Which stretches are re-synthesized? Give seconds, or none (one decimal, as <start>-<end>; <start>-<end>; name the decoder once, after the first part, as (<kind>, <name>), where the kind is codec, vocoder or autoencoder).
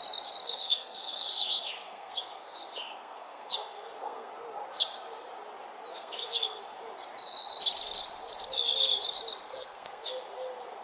0.4-4.3 (codec, SNAC); 5.9-6.6; 9.4-10.1